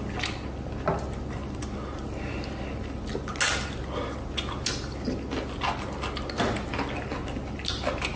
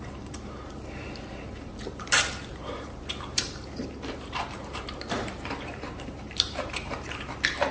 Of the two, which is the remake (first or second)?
second